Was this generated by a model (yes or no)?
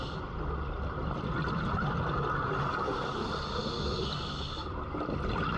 no